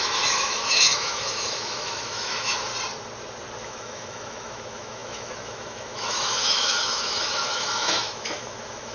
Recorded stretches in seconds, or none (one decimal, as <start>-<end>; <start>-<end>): 2.7-3.6